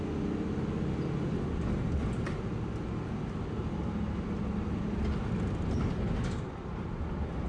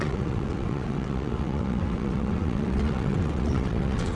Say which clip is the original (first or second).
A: first